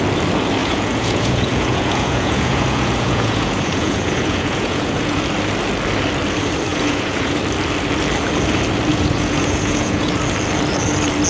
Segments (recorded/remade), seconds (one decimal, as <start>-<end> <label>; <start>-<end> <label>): 0.0-0.6 recorded; 0.6-5.2 remade; 5.2-6.7 recorded; 6.7-7.4 remade; 7.4-8.9 recorded; 8.9-10.1 remade; 10.1-11.3 recorded